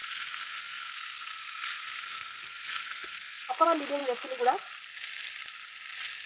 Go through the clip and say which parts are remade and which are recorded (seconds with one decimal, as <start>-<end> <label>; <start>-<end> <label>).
0.0-3.5 remade; 3.5-6.3 recorded